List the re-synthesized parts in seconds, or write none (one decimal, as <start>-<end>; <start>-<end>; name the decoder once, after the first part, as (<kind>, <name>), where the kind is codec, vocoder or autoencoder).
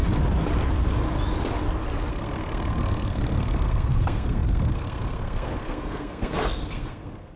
2.1-7.4 (codec, SNAC)